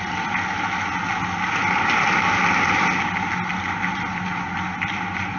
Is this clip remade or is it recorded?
recorded